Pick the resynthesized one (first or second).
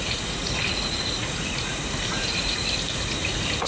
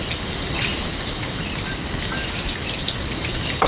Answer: first